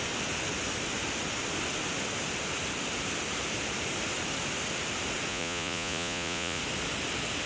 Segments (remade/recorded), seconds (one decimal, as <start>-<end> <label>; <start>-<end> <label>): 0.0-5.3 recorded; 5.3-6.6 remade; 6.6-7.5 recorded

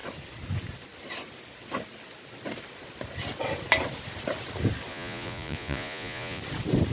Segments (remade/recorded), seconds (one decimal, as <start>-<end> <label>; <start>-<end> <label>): 0.0-4.9 recorded; 4.9-6.4 remade; 6.4-6.9 recorded

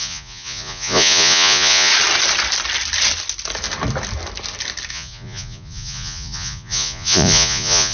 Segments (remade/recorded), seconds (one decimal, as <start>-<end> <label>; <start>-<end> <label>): 0.0-1.9 remade; 1.9-4.9 recorded; 4.9-7.9 remade